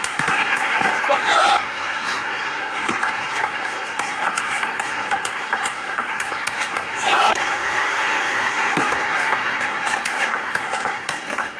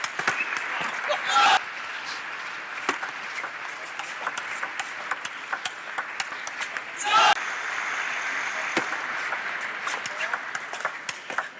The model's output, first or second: first